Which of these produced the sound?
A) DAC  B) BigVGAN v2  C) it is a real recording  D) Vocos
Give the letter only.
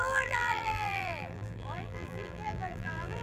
B